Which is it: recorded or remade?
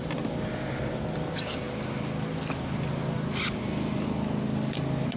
recorded